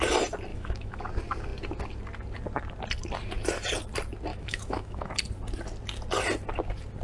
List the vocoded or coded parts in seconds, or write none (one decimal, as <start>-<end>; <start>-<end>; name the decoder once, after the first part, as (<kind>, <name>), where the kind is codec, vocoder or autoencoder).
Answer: 0.5-1.0 (autoencoder, DAC-VAE); 4.3-5.1